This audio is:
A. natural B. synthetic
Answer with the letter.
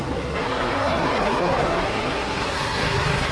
B